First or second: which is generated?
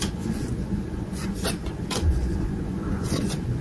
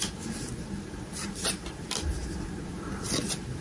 first